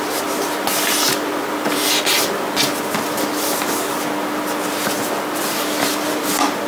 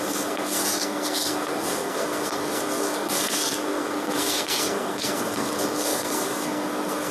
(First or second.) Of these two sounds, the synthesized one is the second